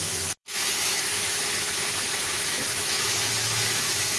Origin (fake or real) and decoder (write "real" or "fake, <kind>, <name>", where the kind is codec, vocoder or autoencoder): fake, autoencoder, DAC-VAE